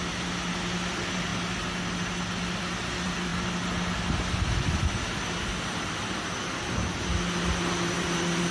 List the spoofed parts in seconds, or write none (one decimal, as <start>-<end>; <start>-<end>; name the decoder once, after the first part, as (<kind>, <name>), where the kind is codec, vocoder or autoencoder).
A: none

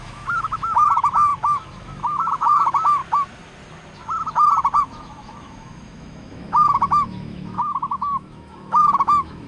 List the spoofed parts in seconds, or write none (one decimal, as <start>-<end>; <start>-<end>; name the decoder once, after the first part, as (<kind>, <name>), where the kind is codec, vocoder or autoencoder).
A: 0.0-3.0 (autoencoder, DAC-VAE); 4.8-9.5

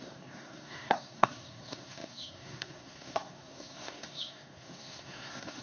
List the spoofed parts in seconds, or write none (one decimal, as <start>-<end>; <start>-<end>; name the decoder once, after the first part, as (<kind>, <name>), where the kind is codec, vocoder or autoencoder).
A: 0.0-5.6 (codec, SNAC)

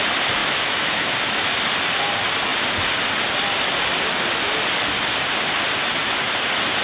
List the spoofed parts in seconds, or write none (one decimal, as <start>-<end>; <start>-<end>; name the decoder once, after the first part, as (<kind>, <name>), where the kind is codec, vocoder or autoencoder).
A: 0.4-1.1 (autoencoder, DAC-VAE)

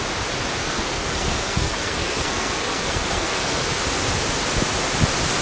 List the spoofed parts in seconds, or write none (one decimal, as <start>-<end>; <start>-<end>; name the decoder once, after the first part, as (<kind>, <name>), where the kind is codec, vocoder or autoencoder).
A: 0.6-3.8 (codec, SNAC)

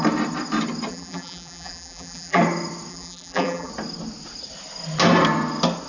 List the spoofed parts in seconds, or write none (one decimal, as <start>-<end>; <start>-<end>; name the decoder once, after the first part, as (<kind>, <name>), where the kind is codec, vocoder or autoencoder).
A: 0.9-2.4 (vocoder, BigVGAN v2); 2.9-3.7

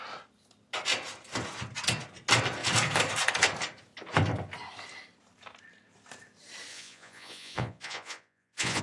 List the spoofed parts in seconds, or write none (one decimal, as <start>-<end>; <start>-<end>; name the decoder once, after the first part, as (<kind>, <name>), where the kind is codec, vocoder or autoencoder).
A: 6.7-8.8 (vocoder, Vocos)